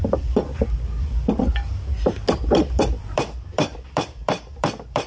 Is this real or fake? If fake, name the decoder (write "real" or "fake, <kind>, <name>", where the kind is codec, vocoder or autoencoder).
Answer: fake, vocoder, BigVGAN v2